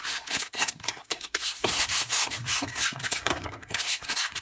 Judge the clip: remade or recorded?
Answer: remade